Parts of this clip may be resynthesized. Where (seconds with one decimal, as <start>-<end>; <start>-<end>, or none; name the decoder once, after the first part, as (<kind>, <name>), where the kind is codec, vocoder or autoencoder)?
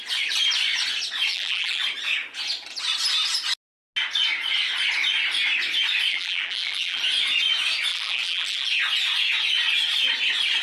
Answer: 1.3-1.8 (vocoder, BigVGAN v2); 6.1-7.0; 7.9-8.7